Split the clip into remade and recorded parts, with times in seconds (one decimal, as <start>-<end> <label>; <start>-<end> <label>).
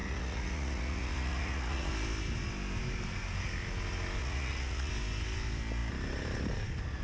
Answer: 0.0-1.9 remade; 1.9-4.2 recorded; 4.2-4.9 remade; 4.9-7.0 recorded